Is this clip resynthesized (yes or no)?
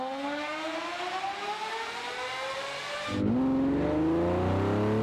no